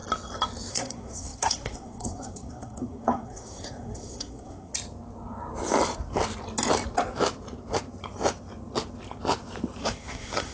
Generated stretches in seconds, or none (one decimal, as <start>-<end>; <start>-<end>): 0.7-4.7; 9.8-10.5